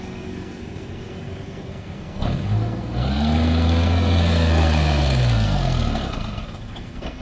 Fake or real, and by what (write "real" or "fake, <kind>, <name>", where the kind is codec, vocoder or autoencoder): fake, codec, SNAC